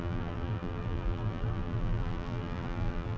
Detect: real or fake fake